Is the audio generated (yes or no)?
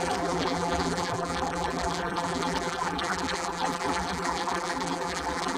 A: yes